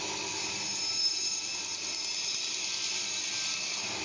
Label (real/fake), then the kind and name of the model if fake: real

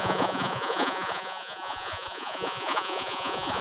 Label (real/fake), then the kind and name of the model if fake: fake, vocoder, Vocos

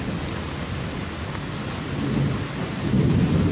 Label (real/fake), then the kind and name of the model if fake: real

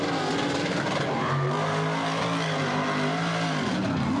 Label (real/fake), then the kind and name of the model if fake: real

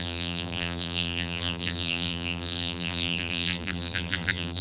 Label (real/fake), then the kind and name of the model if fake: fake, vocoder, BigVGAN v2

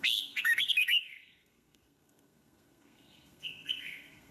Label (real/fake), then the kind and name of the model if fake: fake, codec, SNAC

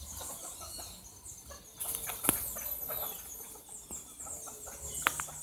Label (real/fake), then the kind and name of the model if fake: real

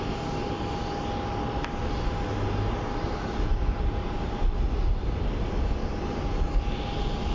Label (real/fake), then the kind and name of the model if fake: real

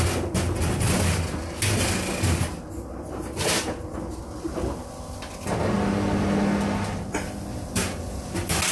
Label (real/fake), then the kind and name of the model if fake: real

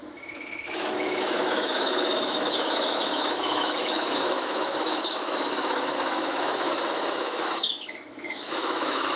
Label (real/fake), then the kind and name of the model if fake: fake, autoencoder, DAC-VAE